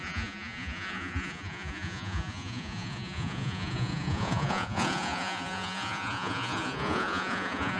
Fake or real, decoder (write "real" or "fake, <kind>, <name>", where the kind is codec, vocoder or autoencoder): fake, vocoder, Vocos